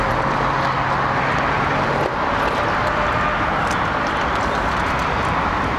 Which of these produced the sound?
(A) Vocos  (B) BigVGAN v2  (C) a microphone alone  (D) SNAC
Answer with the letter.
C